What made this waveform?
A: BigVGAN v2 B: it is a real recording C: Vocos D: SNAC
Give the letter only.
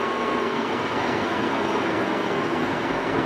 D